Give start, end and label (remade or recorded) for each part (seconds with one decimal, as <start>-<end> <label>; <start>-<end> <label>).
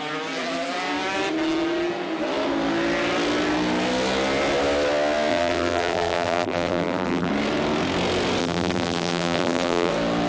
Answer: 0.0-5.3 recorded; 5.3-7.3 remade; 7.3-8.4 recorded; 8.4-9.9 remade; 9.9-10.3 recorded